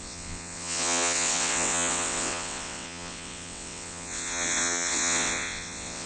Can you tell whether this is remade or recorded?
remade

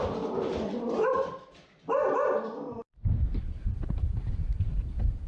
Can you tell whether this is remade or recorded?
recorded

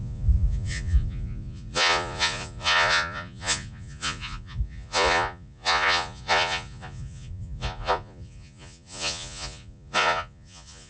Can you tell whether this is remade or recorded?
remade